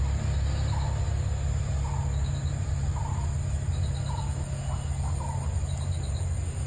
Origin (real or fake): real